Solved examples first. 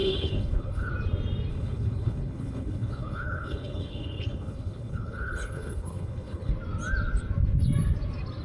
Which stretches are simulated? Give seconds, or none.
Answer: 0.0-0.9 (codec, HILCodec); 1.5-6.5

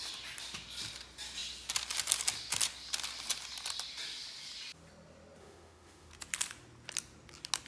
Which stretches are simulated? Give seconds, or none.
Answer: 5.4-6.1 (autoencoder, DAC-VAE)

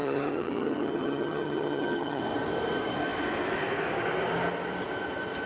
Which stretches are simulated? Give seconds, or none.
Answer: 0.0-2.2 (vocoder, HiFi-GAN)

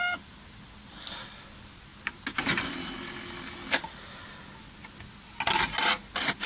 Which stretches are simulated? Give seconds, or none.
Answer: none

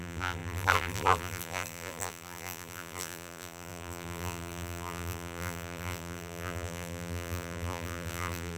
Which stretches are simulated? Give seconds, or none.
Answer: 0.0-8.6 (vocoder, BigVGAN v2)

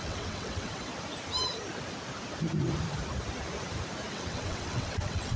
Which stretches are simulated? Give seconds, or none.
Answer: 0.0-0.9 (vocoder, WaveNeXt); 4.1-5.4